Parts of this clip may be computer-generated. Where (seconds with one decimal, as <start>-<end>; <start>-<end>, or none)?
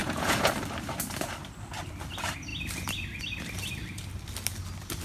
0.0-0.5